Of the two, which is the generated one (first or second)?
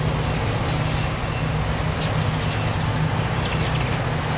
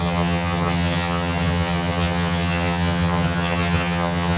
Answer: second